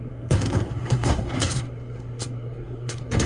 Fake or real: fake